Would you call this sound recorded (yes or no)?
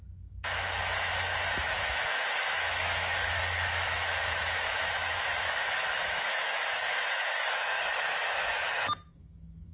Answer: no